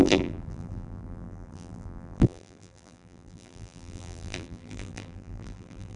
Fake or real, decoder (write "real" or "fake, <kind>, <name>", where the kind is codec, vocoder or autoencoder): fake, vocoder, BigVGAN v2